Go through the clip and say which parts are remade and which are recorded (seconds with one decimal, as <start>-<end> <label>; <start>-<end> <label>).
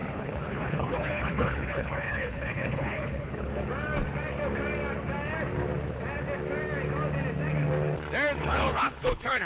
0.0-3.5 remade; 3.5-8.4 recorded; 8.4-9.5 remade